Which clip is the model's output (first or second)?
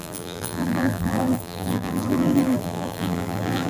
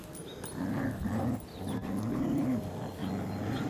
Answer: first